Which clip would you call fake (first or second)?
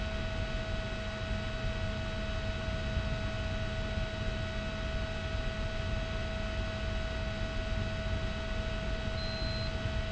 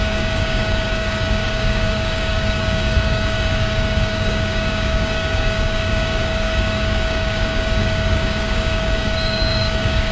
second